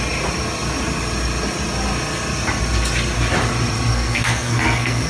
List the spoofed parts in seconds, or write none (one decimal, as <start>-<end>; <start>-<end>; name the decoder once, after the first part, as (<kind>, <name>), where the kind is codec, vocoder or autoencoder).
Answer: 3.9-5.1 (codec, SNAC)